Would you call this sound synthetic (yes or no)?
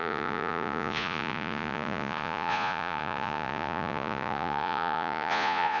yes